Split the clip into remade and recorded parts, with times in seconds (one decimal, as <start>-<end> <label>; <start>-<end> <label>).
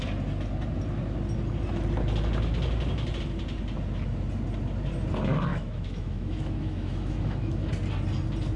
0.0-5.5 recorded; 5.5-7.7 remade; 7.7-8.6 recorded